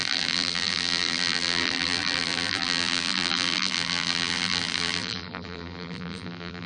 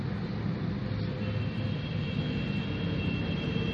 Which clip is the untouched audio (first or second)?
second